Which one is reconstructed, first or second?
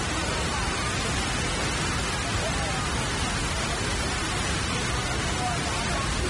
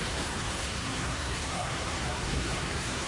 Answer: second